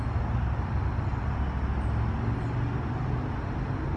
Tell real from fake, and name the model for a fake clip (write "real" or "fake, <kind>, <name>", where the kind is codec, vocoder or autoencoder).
real